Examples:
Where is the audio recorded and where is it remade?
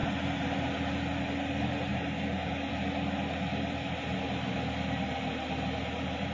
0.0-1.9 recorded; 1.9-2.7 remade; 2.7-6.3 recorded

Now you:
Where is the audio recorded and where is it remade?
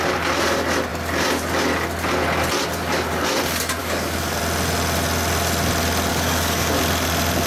0.0-3.8 recorded; 3.8-4.4 remade; 4.4-6.1 recorded; 6.1-6.8 remade; 6.8-7.5 recorded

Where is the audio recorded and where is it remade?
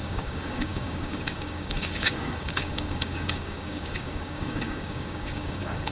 0.0-5.9 remade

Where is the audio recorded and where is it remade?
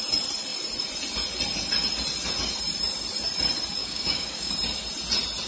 0.0-3.8 recorded; 3.8-4.5 remade; 4.5-5.5 recorded